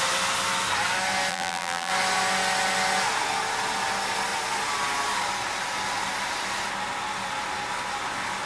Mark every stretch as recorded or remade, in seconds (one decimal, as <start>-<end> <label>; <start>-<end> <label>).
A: 0.0-1.3 recorded; 1.3-1.9 remade; 1.9-8.5 recorded